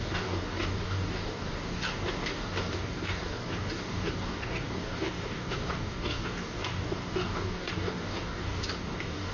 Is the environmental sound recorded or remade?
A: remade